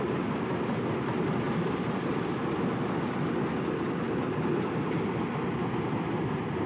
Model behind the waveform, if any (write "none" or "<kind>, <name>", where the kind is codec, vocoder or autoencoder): none